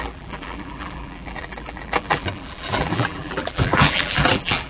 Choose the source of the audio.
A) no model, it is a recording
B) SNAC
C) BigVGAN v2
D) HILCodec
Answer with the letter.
C